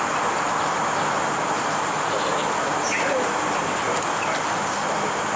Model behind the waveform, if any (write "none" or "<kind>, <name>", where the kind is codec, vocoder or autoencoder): none